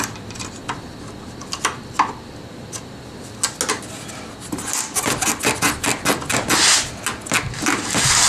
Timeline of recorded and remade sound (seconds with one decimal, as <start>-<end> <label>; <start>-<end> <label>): 0.0-8.3 recorded